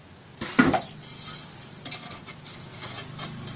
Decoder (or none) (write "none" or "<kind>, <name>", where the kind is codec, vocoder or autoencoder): none